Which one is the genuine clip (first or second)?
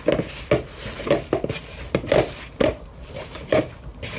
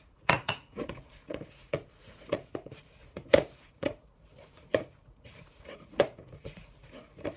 first